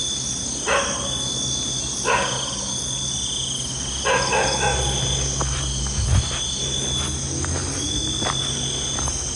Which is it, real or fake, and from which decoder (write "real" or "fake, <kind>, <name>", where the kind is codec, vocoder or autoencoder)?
real